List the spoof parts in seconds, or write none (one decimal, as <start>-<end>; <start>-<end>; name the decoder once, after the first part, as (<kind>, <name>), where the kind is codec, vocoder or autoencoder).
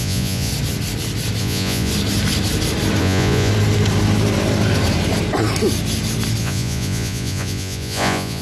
0.0-0.5 (vocoder, Vocos); 1.4-1.9; 3.0-3.5; 6.4-8.4